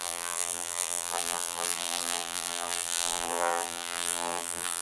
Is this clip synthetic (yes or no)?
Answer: yes